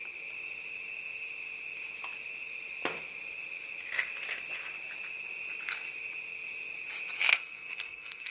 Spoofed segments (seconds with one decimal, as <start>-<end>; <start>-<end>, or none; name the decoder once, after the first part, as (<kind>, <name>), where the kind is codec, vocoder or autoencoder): 7.3-8.3 (codec, SNAC)